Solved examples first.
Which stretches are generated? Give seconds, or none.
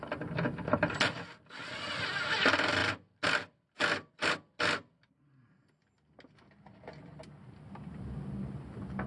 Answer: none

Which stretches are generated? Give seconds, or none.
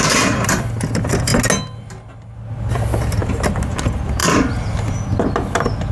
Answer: 0.0-1.3 (vocoder, BigVGAN v2); 2.7-3.2; 3.7-5.9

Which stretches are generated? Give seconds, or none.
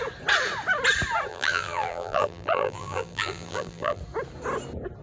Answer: 1.3-4.0 (vocoder, BigVGAN v2)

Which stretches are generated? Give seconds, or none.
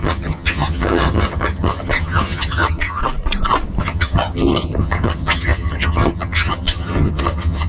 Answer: 0.0-3.0 (vocoder, HiFi-GAN); 3.8-7.7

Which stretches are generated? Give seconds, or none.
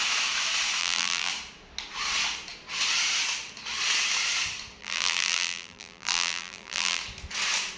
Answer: 0.8-1.3 (vocoder, BigVGAN v2); 4.8-7.0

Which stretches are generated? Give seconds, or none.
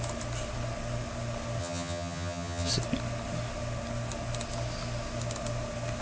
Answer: 1.6-2.7 (vocoder, HiFi-GAN)